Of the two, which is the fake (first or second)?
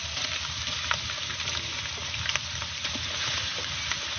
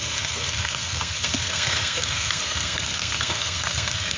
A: second